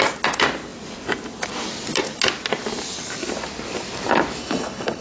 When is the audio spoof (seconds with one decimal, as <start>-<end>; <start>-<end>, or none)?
4.4-5.0